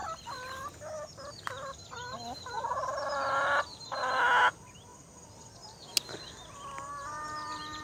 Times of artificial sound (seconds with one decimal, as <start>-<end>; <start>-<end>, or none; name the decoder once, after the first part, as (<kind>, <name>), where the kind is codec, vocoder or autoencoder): none